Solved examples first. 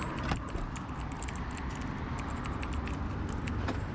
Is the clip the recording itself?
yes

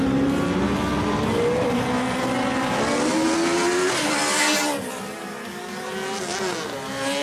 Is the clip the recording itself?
yes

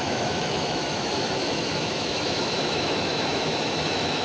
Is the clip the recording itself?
no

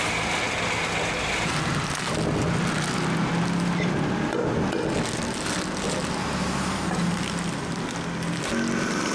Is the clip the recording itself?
yes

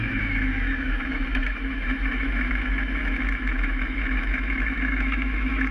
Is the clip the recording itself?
no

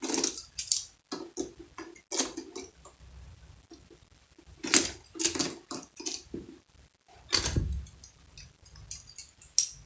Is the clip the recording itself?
yes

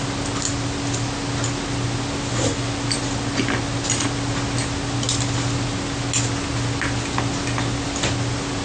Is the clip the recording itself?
yes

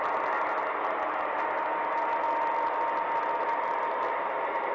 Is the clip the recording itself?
yes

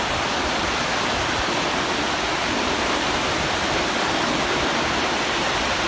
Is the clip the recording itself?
yes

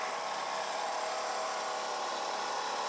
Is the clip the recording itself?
yes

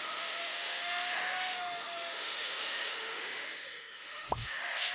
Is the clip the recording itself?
no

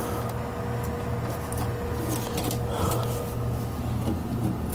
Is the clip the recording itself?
yes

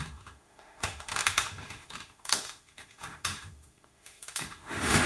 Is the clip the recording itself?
no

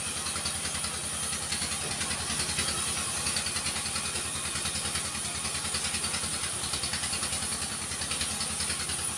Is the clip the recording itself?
yes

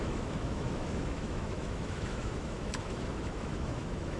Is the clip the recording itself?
no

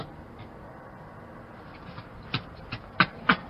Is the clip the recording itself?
yes